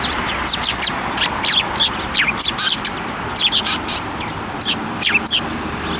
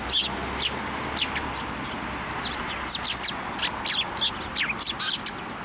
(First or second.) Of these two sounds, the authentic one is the second